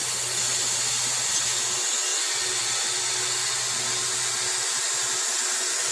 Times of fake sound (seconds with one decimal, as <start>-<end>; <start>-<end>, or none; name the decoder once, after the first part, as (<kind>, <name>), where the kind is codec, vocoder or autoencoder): none